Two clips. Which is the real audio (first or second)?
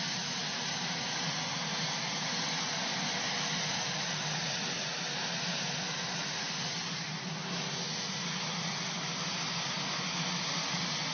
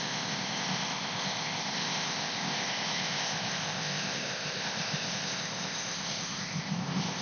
first